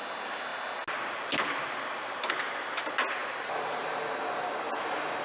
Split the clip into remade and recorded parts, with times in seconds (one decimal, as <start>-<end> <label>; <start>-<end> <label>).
0.0-5.2 recorded